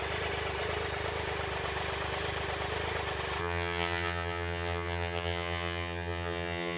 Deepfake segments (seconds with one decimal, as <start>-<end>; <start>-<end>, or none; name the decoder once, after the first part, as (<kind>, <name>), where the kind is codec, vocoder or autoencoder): 3.4-6.8 (vocoder, HiFi-GAN)